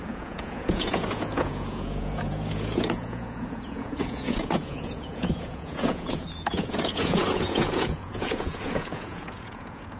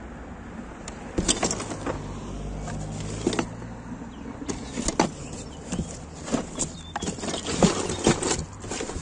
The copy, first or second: first